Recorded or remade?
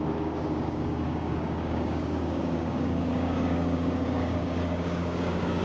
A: remade